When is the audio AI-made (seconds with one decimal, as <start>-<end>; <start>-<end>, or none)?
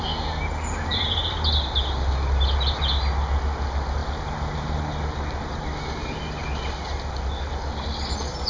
4.0-4.8